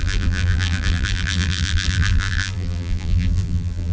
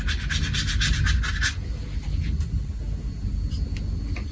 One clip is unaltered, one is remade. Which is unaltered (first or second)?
second